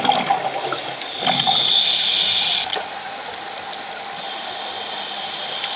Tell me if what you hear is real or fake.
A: real